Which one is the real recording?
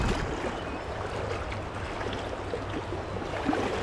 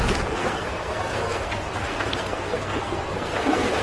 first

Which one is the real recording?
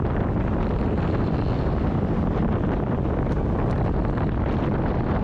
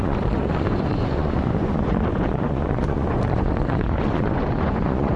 first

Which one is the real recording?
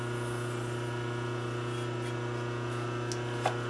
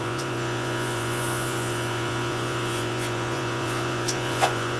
first